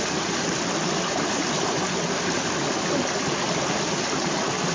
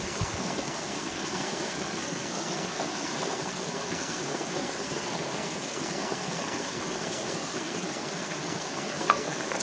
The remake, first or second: second